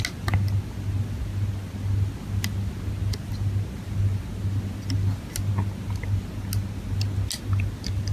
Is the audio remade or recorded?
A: recorded